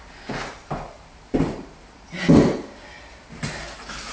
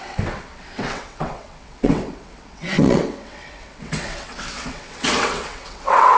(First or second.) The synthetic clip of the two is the second